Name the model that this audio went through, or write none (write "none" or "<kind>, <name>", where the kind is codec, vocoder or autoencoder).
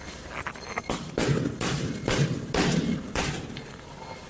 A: none